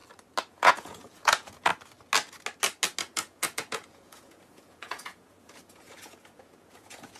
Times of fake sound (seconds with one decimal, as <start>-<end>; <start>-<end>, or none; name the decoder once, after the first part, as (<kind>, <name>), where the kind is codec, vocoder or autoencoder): 0.5-1.7 (vocoder, Vocos); 3.0-7.2